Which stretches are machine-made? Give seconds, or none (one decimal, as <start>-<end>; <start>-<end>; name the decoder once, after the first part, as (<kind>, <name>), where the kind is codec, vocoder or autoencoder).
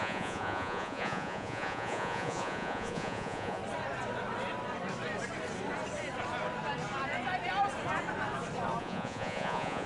0.0-3.6 (vocoder, Vocos); 8.8-9.9